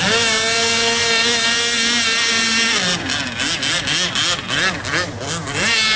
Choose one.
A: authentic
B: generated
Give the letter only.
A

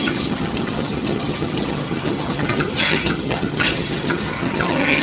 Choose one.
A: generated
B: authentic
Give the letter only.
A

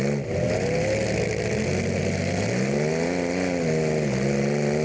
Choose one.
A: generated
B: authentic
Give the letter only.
B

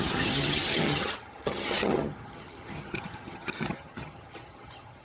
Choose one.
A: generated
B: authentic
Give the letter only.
A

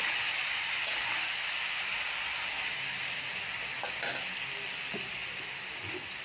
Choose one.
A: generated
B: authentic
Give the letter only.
B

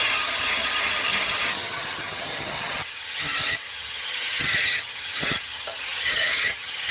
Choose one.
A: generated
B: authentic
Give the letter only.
A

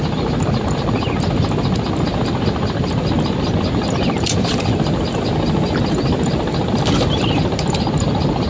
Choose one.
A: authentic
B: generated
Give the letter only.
A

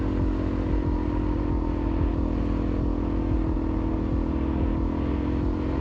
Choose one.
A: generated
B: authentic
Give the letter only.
B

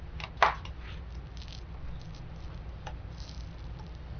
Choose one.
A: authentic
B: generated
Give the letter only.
A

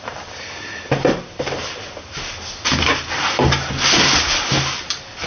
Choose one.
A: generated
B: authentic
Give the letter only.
B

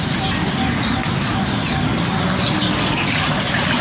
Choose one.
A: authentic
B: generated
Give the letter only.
A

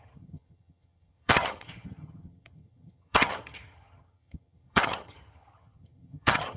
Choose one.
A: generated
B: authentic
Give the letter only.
A